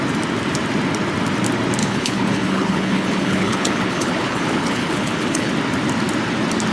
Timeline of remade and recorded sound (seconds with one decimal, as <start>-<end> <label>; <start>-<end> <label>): 0.0-1.8 recorded; 1.8-5.5 remade; 5.5-6.7 recorded

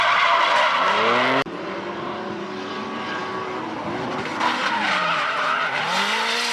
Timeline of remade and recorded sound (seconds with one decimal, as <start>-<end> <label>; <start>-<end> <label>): 0.0-4.6 recorded; 4.6-5.8 remade; 5.8-6.5 recorded